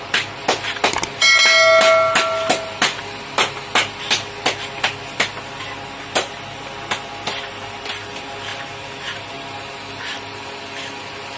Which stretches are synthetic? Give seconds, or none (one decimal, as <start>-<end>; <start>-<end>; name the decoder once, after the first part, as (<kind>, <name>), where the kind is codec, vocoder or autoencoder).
none

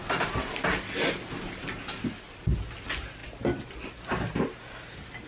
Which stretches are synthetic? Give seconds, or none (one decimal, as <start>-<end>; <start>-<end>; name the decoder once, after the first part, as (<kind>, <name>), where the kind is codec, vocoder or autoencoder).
none

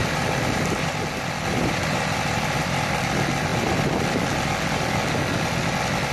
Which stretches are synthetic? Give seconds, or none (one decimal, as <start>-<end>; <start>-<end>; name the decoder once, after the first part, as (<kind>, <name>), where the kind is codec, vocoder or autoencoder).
0.0-0.9 (vocoder, BigVGAN v2)

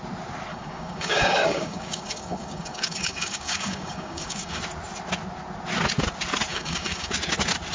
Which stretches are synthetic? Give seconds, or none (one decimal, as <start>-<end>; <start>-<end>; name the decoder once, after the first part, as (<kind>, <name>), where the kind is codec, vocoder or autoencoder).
0.5-4.6 (codec, DAC); 6.5-7.1

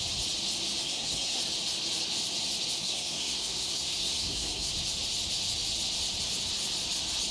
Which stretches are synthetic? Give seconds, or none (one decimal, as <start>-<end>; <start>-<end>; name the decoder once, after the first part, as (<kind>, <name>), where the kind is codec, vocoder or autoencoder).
0.8-1.4 (codec, SNAC); 2.8-4.7